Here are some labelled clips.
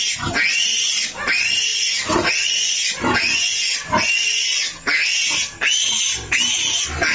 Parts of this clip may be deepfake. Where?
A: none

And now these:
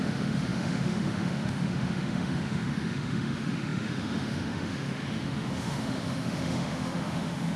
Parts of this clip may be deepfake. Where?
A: 0.0-7.6

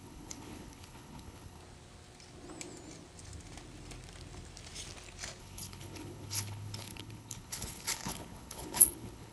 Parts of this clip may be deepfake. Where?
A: 0.0-1.6; 5.4-9.3

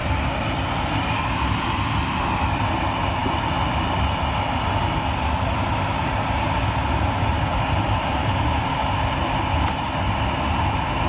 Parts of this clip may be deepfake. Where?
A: 0.0-2.3; 7.5-8.7

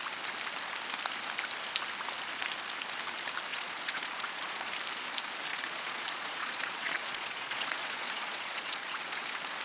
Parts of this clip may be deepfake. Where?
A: 3.5-4.7; 5.5-9.6

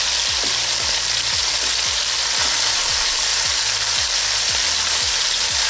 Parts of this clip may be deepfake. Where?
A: none